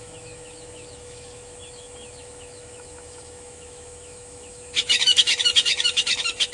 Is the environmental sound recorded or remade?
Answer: remade